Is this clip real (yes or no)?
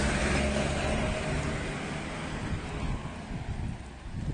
yes